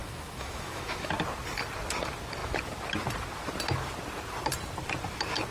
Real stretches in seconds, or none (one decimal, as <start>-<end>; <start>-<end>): 1.1-5.5